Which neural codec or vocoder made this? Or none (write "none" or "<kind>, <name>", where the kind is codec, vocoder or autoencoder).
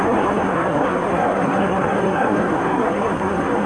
codec, SNAC